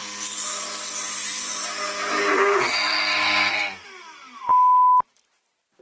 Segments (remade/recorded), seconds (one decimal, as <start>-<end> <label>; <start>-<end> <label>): 0.0-5.8 recorded